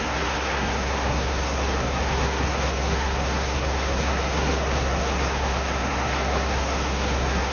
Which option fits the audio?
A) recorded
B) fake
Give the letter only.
B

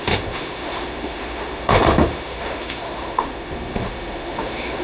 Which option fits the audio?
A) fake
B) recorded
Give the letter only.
A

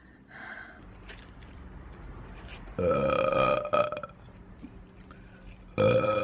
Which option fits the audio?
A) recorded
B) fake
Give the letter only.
B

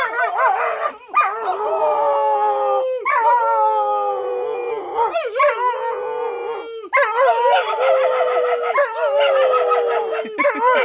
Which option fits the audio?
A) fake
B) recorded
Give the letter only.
B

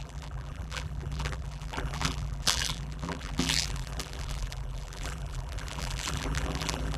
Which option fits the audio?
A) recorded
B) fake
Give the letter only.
B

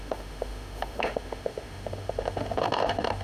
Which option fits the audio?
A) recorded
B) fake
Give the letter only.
B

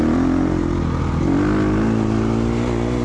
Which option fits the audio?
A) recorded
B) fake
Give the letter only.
A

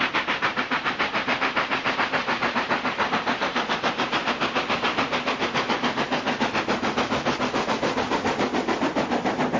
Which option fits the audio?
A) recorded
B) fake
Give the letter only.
A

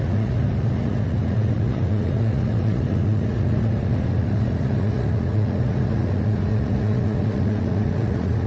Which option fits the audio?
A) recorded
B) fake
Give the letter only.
B